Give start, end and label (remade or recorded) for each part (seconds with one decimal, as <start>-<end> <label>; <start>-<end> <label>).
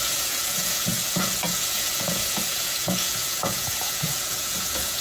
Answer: 0.0-5.0 remade